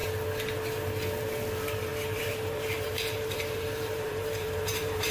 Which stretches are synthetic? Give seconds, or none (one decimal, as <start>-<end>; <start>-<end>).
1.9-5.1